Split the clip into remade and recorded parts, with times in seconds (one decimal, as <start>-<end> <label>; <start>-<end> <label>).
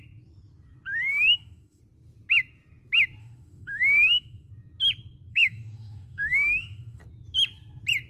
0.0-1.1 recorded; 1.1-1.8 remade; 1.8-3.2 recorded; 3.2-4.5 remade; 4.5-5.3 recorded; 5.3-7.0 remade; 7.0-8.1 recorded